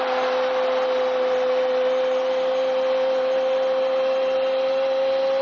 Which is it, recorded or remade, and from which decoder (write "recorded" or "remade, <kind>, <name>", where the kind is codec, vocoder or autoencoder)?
recorded